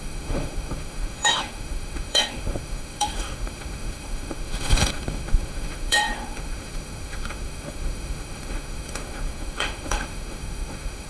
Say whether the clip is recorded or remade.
remade